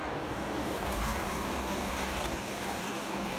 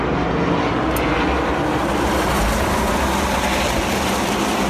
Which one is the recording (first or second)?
second